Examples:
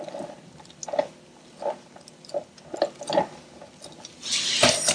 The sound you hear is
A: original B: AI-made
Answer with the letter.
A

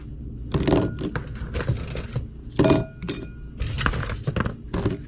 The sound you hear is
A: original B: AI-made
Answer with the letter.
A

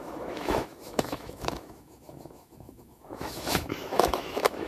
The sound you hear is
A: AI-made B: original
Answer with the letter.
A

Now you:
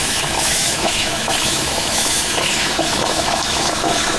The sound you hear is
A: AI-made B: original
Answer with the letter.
A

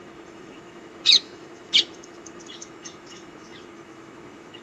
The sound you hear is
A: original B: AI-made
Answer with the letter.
B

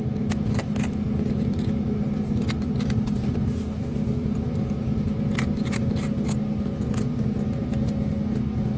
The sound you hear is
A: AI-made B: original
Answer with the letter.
B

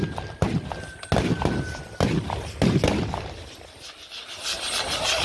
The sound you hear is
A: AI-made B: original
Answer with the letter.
B